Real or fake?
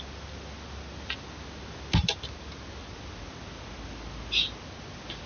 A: real